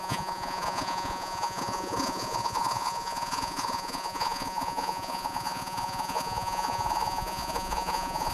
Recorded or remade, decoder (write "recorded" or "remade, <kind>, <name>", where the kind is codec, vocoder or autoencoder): remade, vocoder, Vocos